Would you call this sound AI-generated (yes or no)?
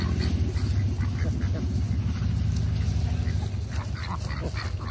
no